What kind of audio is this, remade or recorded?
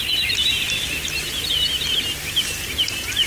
recorded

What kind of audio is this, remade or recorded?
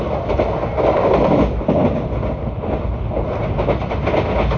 recorded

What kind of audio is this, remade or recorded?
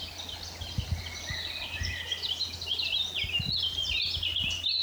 recorded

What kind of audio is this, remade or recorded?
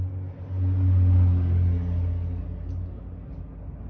recorded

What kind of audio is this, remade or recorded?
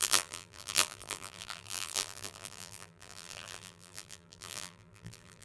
remade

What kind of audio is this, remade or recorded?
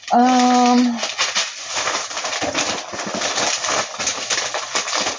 recorded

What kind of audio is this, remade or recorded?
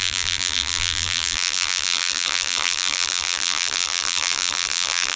remade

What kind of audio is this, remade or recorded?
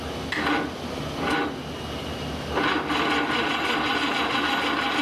recorded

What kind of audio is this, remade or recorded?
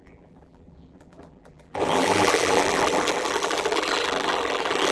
remade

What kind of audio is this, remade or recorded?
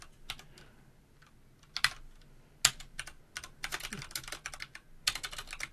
recorded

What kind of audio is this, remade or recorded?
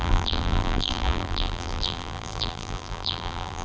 remade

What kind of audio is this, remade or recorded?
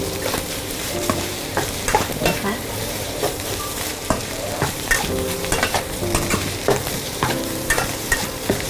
remade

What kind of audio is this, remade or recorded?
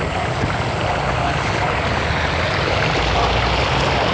recorded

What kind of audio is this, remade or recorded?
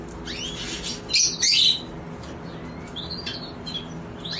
recorded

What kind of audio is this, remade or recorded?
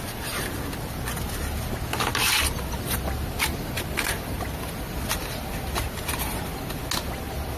recorded